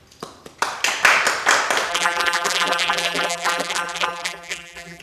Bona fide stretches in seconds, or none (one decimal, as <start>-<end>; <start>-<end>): 0.0-1.9

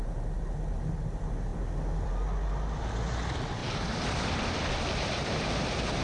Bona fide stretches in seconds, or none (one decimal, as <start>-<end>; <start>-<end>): 0.0-1.5; 2.1-3.6

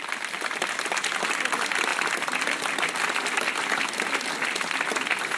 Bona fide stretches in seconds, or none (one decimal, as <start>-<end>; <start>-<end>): 0.0-5.4